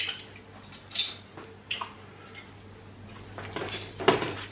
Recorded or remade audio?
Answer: recorded